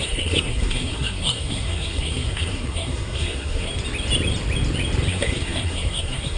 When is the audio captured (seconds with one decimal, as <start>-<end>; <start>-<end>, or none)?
3.7-5.1